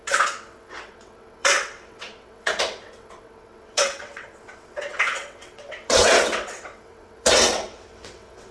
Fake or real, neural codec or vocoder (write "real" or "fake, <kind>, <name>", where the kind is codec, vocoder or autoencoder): fake, vocoder, WaveNeXt